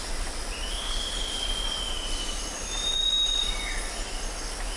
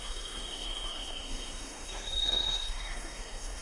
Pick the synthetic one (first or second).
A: second